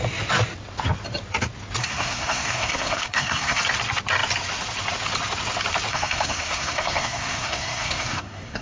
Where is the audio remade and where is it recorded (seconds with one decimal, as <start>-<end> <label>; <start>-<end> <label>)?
0.0-1.8 recorded; 1.8-3.6 remade; 3.6-5.9 recorded; 5.9-8.6 remade